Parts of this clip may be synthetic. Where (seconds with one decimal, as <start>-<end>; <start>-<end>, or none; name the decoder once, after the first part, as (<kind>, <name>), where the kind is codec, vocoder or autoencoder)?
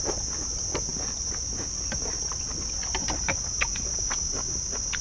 none